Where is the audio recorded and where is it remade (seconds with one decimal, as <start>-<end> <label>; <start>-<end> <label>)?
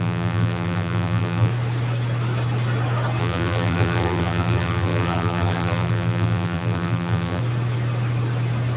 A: 0.0-1.5 remade; 1.5-3.2 recorded; 3.2-7.4 remade; 7.4-8.8 recorded